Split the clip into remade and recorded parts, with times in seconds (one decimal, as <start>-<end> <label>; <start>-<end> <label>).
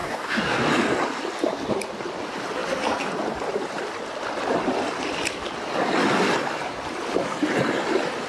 0.0-0.7 remade; 0.7-8.3 recorded